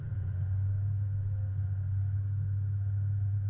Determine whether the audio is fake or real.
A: real